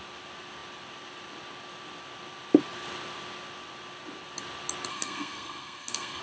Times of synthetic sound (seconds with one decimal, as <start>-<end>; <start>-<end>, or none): 4.9-6.2